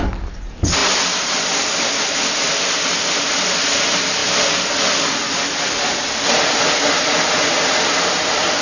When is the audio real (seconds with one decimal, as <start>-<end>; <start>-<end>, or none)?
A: 0.0-8.6

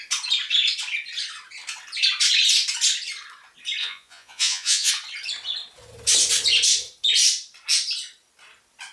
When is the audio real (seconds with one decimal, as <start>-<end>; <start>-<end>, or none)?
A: 0.0-3.8; 4.9-8.9